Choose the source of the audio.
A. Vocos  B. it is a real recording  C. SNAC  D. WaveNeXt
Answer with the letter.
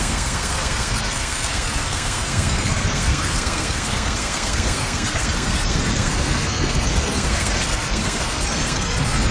C